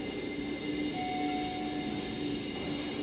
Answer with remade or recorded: recorded